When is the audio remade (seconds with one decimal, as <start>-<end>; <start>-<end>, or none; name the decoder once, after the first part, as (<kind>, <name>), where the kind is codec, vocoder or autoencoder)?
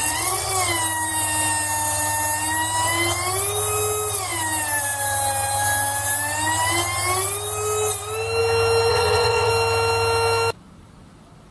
0.0-0.5 (vocoder, WaveNeXt); 8.9-9.5